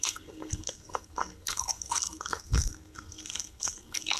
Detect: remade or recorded remade